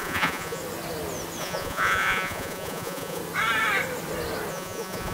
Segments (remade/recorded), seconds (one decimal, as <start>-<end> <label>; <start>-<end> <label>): 0.0-0.6 remade; 0.6-1.4 recorded; 1.4-3.2 remade; 3.2-4.5 recorded; 4.5-5.1 remade